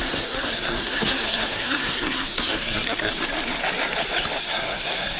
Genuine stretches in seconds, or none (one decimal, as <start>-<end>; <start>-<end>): 3.1-4.4